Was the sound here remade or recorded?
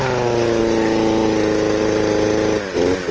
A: recorded